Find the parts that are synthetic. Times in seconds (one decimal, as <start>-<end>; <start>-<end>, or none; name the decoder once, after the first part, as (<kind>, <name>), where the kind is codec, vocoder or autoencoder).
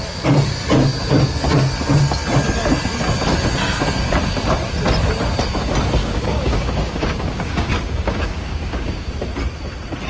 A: 6.0-9.1 (codec, DAC)